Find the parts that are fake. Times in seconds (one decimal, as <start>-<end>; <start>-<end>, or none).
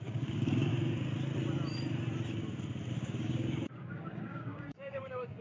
0.0-0.7; 2.9-5.4